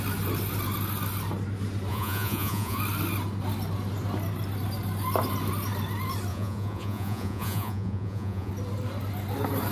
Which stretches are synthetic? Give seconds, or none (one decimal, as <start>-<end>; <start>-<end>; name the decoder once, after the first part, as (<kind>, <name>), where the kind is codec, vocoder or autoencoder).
1.9-2.8 (vocoder, Vocos); 6.3-8.5